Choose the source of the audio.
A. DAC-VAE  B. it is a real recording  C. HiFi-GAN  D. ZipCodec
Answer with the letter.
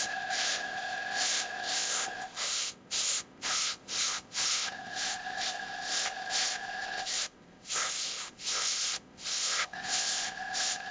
D